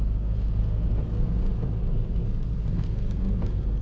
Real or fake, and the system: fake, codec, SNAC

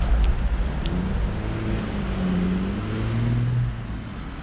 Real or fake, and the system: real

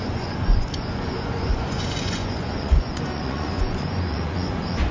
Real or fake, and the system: fake, vocoder, Vocos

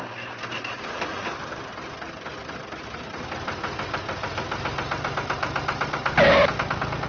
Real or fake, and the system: real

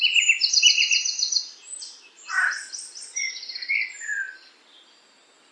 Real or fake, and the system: real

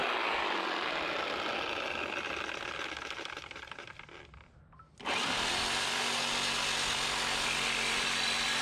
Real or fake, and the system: real